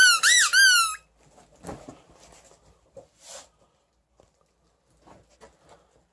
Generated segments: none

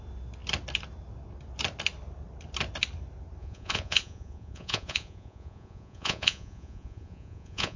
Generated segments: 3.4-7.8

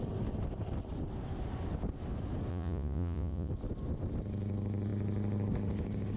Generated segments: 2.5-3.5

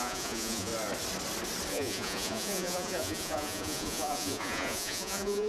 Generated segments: 0.0-0.7; 1.7-5.5

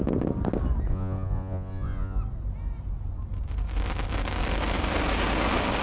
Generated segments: 0.9-2.2

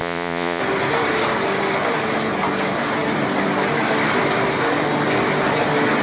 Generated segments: 0.0-0.6